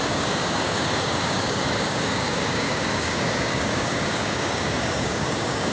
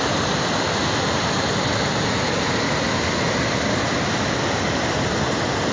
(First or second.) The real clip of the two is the second